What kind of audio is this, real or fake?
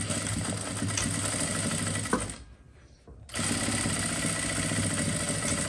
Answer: real